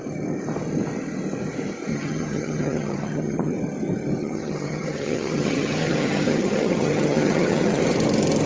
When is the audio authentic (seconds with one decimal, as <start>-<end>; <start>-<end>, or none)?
0.0-1.9; 3.5-4.2; 7.8-8.5